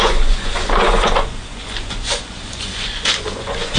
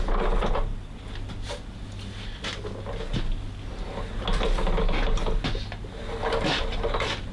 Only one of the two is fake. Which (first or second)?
first